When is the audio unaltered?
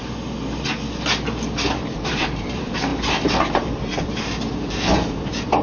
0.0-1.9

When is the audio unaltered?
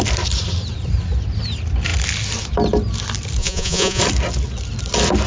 0.0-3.4; 4.0-5.3